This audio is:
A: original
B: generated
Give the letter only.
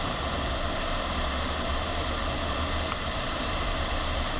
B